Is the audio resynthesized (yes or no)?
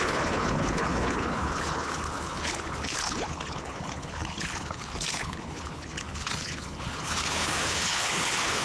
yes